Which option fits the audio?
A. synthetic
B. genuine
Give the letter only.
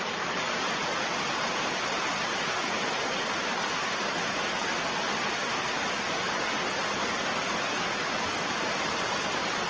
B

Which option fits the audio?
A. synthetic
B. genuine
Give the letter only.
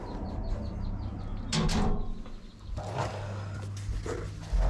B